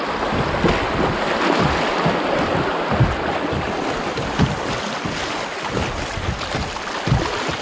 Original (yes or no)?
yes